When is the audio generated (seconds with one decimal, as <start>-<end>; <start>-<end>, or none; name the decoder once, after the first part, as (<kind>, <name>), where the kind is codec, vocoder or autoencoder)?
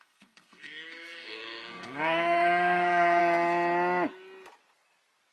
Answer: 0.0-3.2 (codec, SNAC)